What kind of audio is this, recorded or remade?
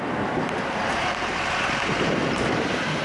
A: remade